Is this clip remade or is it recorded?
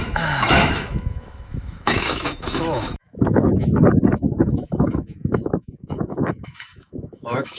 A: remade